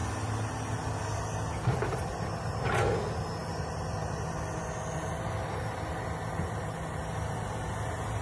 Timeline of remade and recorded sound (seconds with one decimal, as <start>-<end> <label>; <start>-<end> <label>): 0.0-3.4 recorded; 3.4-4.4 remade; 4.4-8.2 recorded